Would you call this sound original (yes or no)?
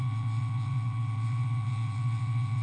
no